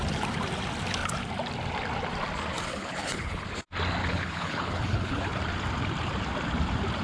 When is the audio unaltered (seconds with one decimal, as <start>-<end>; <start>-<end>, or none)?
0.0-2.7; 3.4-4.0; 5.3-7.0